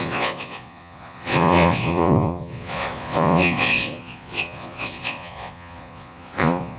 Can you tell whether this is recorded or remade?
remade